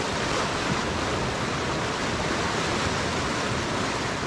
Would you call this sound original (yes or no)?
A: yes